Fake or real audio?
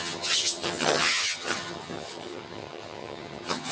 fake